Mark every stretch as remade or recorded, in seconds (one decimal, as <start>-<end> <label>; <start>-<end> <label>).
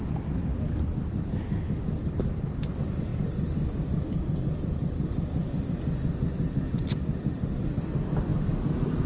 0.0-9.1 remade